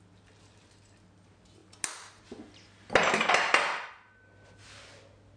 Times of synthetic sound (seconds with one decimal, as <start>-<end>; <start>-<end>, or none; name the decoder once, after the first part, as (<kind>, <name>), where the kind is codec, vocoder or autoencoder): none